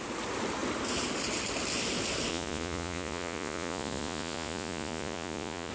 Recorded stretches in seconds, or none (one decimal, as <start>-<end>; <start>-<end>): 0.0-2.3